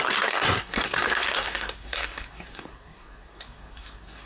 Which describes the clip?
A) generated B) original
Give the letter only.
A